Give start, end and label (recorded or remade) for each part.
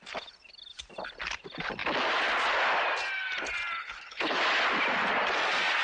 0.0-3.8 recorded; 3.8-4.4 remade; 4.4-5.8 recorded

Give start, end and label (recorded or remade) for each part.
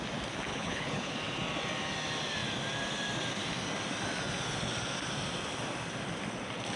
0.0-0.5 recorded; 0.5-1.1 remade; 1.1-6.8 recorded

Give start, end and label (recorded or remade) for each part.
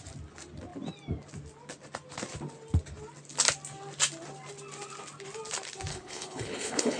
0.0-5.9 recorded; 5.9-7.0 remade